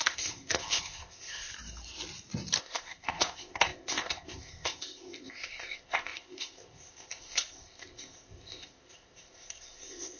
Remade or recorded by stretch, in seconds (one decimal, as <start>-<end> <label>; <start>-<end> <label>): 0.0-1.5 remade; 1.5-2.6 recorded; 2.6-10.2 remade